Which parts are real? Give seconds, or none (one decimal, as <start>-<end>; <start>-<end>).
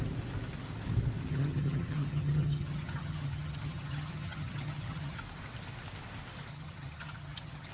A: 0.0-1.2; 5.2-6.5